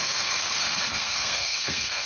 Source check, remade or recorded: remade